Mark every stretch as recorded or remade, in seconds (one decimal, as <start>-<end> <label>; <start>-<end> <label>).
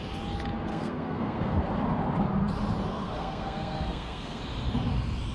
0.0-0.7 recorded; 0.7-1.6 remade; 1.6-2.9 recorded; 2.9-4.4 remade; 4.4-5.3 recorded